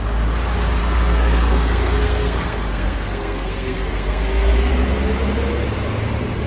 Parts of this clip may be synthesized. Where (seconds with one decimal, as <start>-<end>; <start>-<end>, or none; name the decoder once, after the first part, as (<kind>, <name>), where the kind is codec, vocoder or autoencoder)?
0.8-4.7 (codec, SNAC)